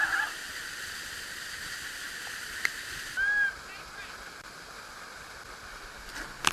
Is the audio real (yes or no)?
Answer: yes